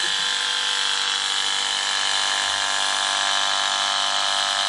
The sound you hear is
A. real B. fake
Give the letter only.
A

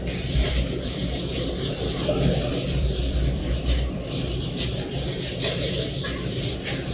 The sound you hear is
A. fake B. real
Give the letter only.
A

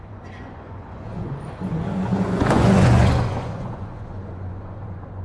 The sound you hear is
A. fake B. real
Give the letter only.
A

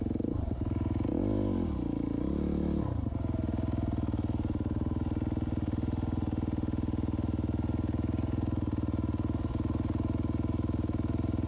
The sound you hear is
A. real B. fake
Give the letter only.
A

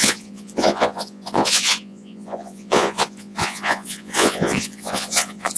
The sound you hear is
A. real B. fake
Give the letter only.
B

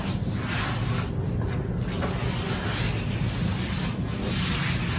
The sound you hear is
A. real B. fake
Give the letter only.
A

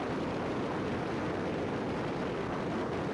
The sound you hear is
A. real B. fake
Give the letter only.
A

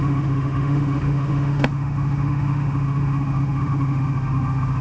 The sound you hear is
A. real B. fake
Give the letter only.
B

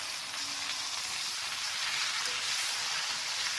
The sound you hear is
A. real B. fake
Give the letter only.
A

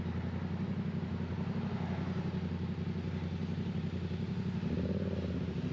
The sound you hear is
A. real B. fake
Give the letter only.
A